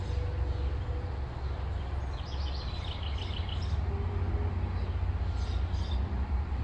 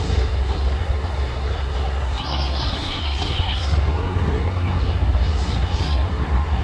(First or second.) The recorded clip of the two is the first